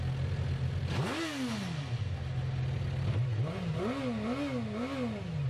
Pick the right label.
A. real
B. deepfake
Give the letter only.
A